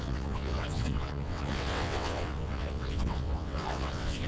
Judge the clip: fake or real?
fake